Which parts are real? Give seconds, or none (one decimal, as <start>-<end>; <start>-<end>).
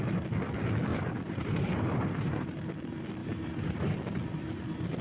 0.0-0.9; 2.6-3.2; 3.9-5.0